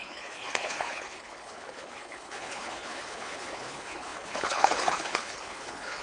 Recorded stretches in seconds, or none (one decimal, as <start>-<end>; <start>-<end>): none